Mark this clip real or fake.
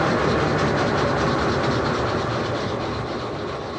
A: real